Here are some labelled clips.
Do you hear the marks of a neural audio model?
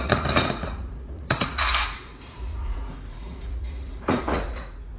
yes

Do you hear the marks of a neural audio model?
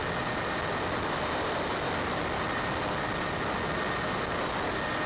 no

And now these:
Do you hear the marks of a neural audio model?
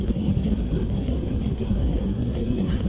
yes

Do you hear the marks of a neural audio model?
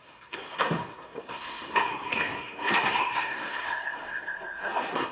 yes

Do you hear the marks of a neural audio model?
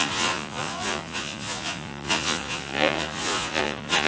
yes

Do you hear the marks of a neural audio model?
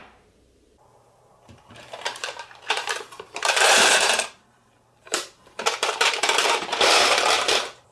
yes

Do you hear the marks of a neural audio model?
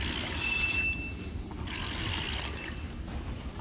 no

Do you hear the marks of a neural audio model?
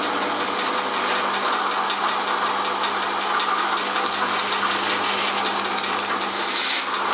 no